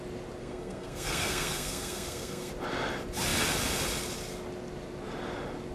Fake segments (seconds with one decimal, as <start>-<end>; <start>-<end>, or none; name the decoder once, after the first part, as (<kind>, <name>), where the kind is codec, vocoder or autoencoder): 0.4-2.5 (codec, SNAC)